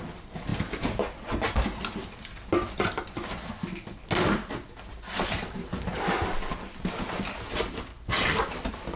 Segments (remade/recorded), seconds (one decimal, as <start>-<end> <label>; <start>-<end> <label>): 0.0-9.0 recorded